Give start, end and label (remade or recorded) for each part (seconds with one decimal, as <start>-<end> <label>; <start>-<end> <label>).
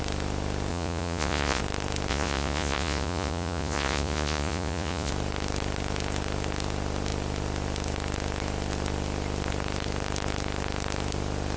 0.0-0.7 recorded; 0.7-1.6 remade; 1.6-2.1 recorded; 2.1-5.1 remade; 5.1-11.6 recorded